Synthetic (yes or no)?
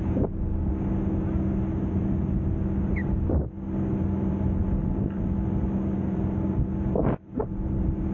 no